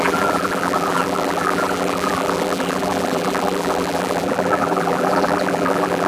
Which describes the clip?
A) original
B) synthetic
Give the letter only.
B